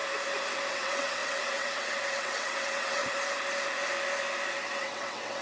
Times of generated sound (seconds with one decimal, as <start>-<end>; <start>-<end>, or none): 0.7-3.0; 4.7-5.4